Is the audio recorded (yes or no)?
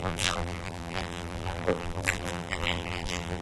no